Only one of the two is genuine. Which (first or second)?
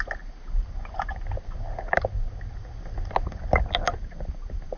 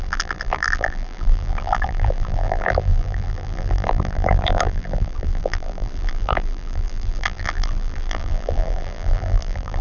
first